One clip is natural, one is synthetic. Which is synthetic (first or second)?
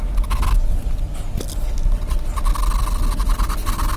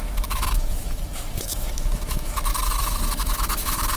second